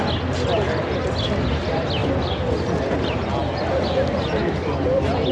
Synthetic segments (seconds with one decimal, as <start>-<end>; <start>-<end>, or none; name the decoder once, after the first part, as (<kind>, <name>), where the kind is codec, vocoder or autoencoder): none